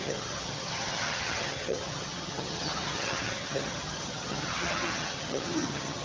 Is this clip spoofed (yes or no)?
yes